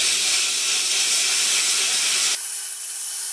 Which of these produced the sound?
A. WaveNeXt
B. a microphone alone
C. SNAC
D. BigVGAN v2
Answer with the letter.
B